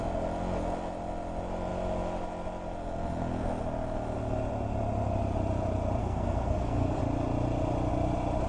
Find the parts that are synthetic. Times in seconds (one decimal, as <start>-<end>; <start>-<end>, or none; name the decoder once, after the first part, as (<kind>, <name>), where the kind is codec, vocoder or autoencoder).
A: 6.0-7.0 (codec, SNAC)